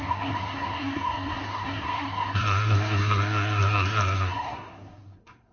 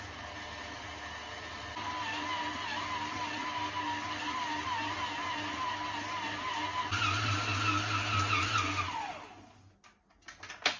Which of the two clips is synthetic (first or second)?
first